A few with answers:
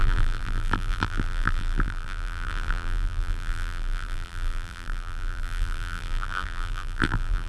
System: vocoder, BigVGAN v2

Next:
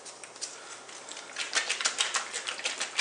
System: none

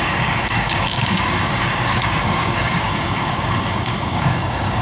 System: codec, DAC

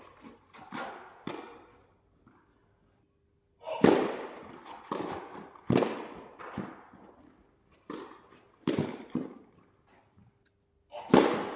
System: none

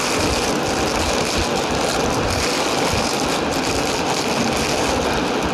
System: none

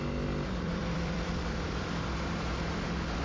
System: vocoder, BigVGAN v2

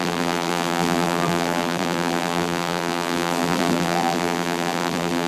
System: vocoder, BigVGAN v2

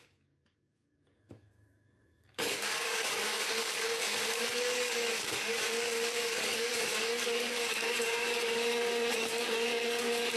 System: codec, DAC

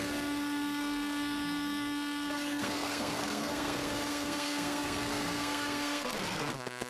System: codec, SNAC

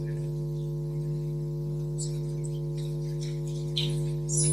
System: none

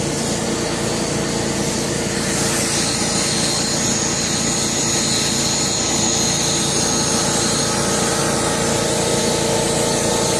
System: none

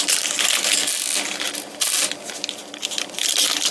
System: none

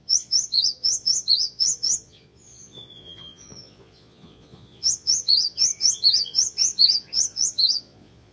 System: vocoder, Vocos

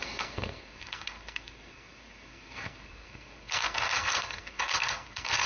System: codec, SNAC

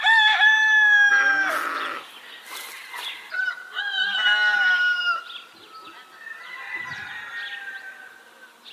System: none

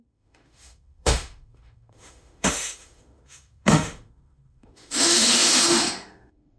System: autoencoder, DAC-VAE